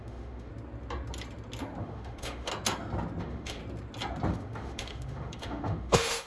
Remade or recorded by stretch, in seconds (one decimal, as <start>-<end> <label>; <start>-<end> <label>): 0.0-0.5 remade; 0.5-1.8 recorded; 1.8-2.5 remade; 2.5-3.2 recorded; 3.2-3.6 remade; 3.6-4.3 recorded; 4.3-6.3 remade

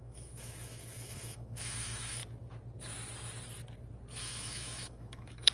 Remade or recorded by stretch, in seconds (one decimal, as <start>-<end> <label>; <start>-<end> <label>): 0.0-2.2 remade; 2.2-4.2 recorded; 4.2-5.5 remade